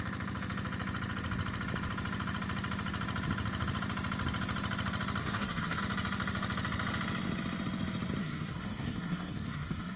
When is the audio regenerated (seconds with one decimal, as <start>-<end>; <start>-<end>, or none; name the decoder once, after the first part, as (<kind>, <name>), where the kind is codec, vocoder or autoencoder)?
5.2-5.8 (codec, SNAC); 8.2-10.0